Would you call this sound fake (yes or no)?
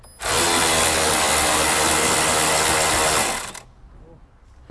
no